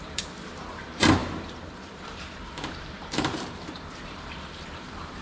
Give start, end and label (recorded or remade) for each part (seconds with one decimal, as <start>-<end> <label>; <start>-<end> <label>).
0.0-5.2 remade